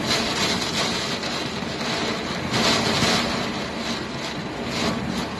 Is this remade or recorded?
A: recorded